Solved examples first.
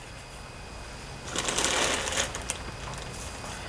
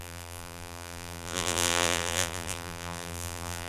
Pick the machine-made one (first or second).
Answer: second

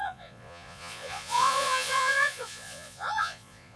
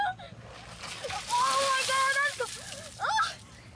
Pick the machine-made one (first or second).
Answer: first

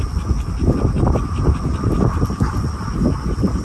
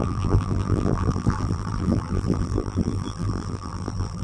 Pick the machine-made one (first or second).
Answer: second